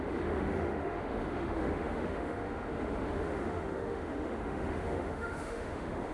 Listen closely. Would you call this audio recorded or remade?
remade